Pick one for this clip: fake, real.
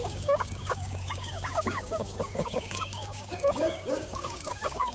fake